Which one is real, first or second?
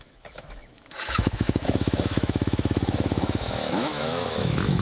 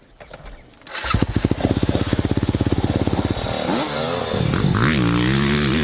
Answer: second